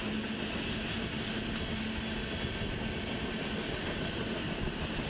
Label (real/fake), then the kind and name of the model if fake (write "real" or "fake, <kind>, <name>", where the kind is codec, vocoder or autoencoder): real